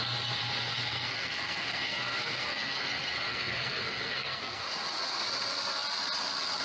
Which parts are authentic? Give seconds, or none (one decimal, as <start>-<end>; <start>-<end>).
0.0-0.9; 2.8-3.3; 4.6-6.6